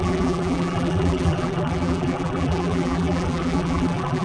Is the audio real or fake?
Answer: fake